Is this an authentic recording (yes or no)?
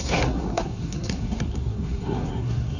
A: no